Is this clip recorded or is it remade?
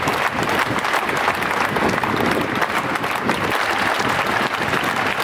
recorded